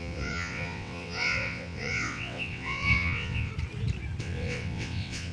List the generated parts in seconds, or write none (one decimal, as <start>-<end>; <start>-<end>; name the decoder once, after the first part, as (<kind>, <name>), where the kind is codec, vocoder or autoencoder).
0.0-3.5 (vocoder, WaveNeXt); 4.2-5.3